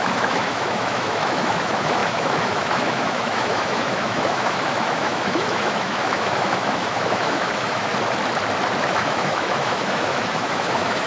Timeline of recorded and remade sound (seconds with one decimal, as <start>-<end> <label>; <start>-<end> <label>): 0.0-7.9 remade; 7.9-8.8 recorded; 8.8-11.1 remade